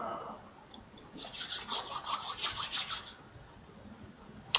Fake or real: real